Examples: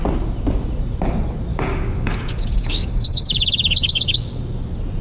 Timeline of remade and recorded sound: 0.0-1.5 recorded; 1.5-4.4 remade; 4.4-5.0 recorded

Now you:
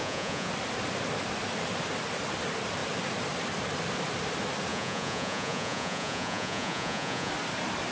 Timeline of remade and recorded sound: 0.0-0.5 remade; 0.5-4.7 recorded; 4.7-7.3 remade; 7.3-7.9 recorded

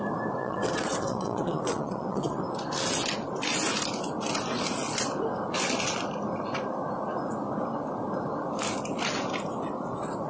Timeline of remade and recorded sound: 0.0-0.4 recorded; 0.4-2.4 remade; 2.4-10.3 recorded

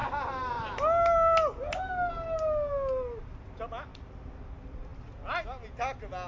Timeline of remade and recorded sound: 0.0-6.3 recorded

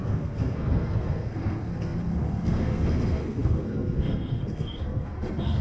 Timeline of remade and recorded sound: 0.0-5.6 remade

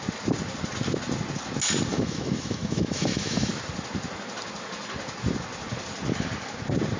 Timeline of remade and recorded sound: 0.0-1.9 recorded; 1.9-3.5 remade; 3.5-7.0 recorded

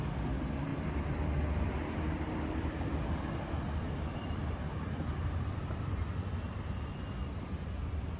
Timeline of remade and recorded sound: 0.0-0.7 recorded; 0.7-4.5 remade; 4.5-8.2 recorded